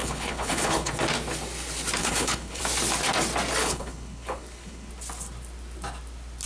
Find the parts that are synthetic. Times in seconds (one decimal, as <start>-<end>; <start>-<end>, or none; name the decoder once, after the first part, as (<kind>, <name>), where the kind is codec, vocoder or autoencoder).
0.0-0.9 (codec, HILCodec); 2.0-2.6; 3.6-4.9